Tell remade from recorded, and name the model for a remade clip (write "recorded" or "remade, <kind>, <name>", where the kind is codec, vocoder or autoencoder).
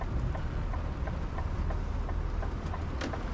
recorded